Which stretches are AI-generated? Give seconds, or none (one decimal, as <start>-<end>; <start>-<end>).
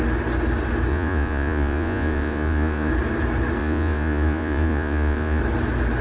0.9-2.9; 3.6-5.4